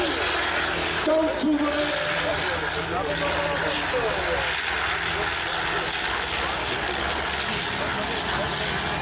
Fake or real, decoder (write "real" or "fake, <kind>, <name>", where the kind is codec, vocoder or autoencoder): real